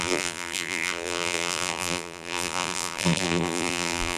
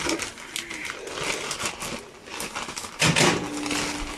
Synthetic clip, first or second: first